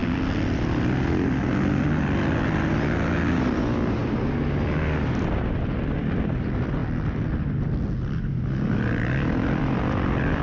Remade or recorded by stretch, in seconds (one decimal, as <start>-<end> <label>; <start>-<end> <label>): 0.0-9.6 recorded; 9.6-10.4 remade

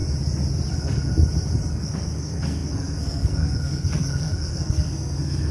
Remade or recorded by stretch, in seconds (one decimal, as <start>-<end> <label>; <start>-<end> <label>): 0.0-0.7 recorded; 0.7-1.1 remade; 1.1-1.7 recorded; 1.7-5.5 remade

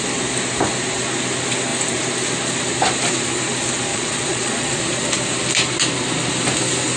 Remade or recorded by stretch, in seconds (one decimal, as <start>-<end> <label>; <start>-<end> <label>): 0.0-3.9 recorded; 3.9-4.8 remade; 4.8-7.0 recorded

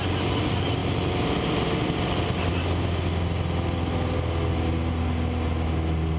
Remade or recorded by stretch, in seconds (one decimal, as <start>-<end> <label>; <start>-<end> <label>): 0.0-6.2 recorded